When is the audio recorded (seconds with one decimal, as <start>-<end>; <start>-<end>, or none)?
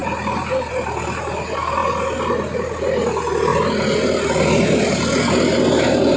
0.0-6.2